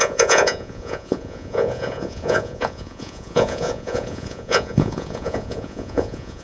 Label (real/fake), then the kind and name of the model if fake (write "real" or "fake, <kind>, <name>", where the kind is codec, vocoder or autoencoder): fake, vocoder, Vocos